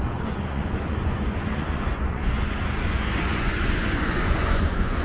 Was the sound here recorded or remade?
remade